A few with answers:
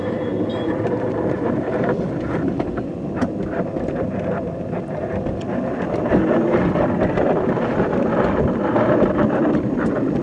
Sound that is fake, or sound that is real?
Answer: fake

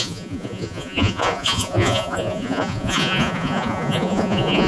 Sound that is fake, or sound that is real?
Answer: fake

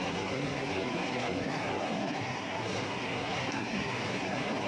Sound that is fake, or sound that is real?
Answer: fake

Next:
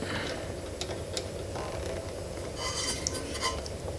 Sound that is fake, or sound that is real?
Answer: real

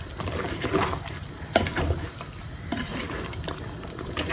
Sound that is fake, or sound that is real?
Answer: fake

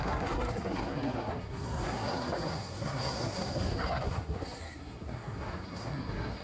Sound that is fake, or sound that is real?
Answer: fake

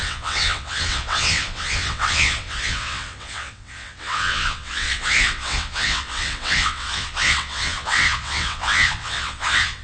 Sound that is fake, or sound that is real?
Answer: fake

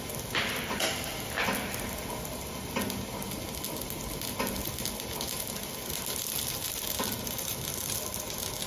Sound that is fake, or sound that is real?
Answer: real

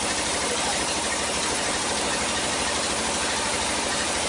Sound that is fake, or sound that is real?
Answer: fake